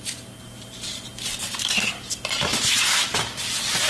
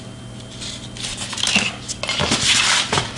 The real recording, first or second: second